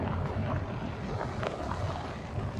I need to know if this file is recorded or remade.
recorded